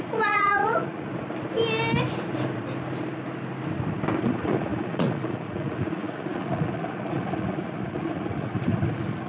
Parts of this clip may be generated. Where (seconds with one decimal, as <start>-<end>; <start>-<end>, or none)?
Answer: 0.0-1.1; 4.2-9.3